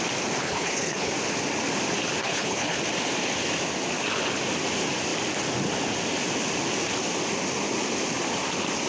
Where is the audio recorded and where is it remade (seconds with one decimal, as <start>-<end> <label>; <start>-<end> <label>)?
0.0-0.4 recorded; 0.4-1.1 remade; 1.1-2.2 recorded; 2.2-2.8 remade; 2.8-8.9 recorded